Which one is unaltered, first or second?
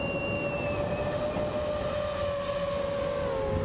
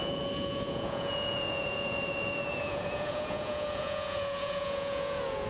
first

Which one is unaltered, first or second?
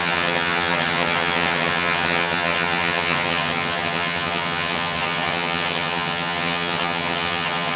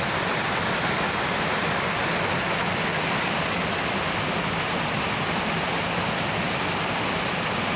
second